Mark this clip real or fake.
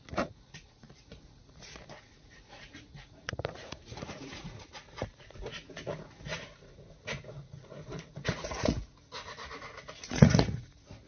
fake